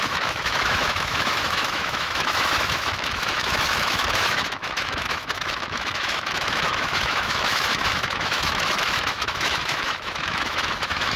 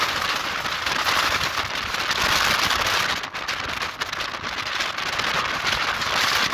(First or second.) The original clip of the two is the second